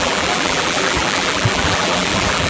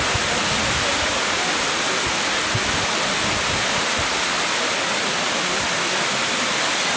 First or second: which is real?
second